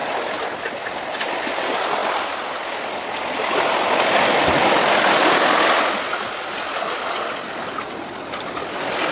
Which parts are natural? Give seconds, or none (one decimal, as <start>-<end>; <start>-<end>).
0.0-9.1